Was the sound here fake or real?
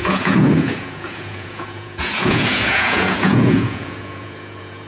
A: fake